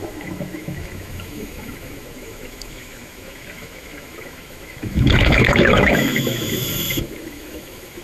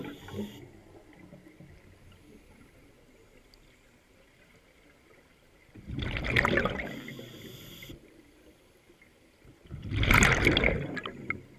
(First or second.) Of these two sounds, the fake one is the first